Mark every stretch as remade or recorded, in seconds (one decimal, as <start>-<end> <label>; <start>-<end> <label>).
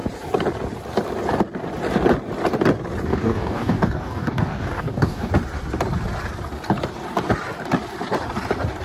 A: 0.0-3.1 recorded; 3.1-5.3 remade; 5.3-8.8 recorded